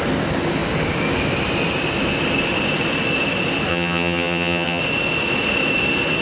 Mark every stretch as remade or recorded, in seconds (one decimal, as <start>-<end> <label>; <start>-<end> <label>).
0.0-3.7 recorded; 3.7-4.8 remade; 4.8-6.2 recorded